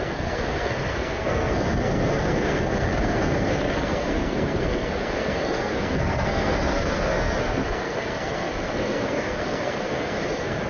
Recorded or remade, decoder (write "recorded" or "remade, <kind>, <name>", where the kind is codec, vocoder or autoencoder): remade, codec, SNAC